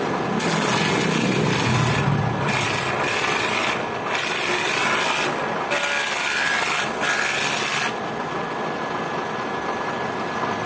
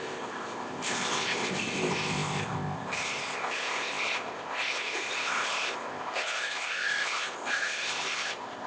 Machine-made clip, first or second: second